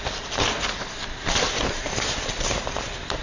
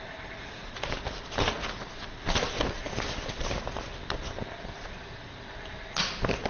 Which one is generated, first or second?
first